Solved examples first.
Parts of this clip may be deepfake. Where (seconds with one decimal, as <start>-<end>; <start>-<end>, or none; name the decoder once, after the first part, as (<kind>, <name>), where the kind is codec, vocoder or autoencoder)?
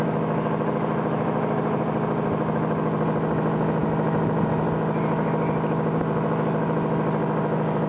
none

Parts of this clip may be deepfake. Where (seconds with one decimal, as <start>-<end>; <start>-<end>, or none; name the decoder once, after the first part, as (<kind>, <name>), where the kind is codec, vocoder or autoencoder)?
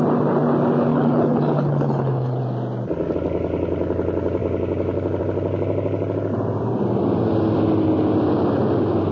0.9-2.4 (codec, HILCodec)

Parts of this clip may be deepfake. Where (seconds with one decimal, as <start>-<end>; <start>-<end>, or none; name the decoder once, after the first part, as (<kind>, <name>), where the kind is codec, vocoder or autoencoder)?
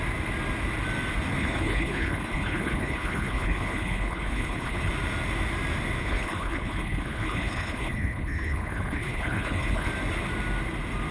1.4-4.9 (codec, HILCodec); 6.0-9.9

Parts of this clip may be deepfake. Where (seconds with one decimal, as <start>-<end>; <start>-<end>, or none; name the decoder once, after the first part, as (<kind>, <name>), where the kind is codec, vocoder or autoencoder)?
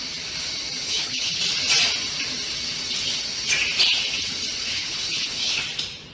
0.8-1.4 (codec, HILCodec); 4.6-5.6